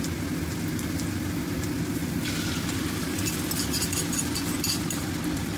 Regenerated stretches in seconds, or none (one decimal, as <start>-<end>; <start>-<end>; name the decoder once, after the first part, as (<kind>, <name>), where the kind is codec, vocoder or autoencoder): 2.0-5.6 (vocoder, BigVGAN v2)